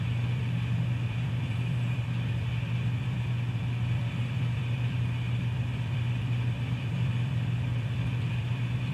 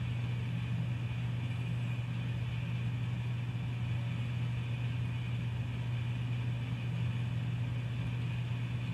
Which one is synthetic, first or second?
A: first